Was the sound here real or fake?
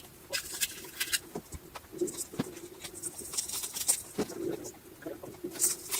real